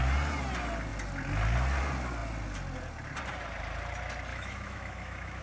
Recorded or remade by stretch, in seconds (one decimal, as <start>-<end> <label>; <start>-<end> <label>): 0.0-4.3 recorded; 4.3-5.4 remade